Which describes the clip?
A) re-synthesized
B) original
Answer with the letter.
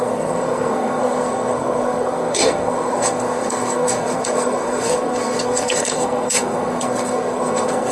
A